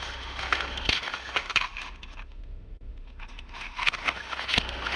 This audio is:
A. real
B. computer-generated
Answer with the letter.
B